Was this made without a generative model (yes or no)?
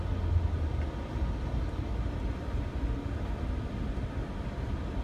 yes